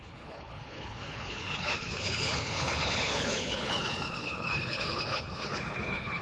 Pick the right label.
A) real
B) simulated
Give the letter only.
B